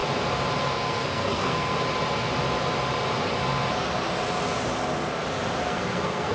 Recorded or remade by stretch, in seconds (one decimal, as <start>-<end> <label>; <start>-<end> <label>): 0.0-0.6 recorded; 0.6-1.8 remade; 1.8-5.6 recorded; 5.6-6.3 remade